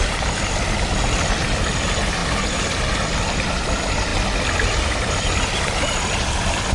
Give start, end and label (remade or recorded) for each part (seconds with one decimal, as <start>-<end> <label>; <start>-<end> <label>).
0.0-6.7 recorded